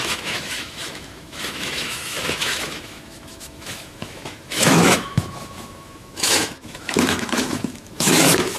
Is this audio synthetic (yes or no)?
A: yes